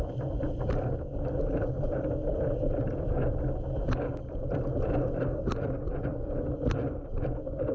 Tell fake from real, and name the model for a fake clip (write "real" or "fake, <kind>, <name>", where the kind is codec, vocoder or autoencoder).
fake, vocoder, BigVGAN v2